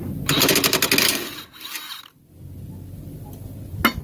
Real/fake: real